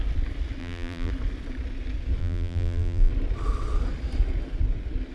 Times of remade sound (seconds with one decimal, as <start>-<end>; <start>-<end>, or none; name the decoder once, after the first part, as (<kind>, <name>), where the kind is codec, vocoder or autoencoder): 0.6-1.1 (vocoder, BigVGAN v2); 2.2-3.1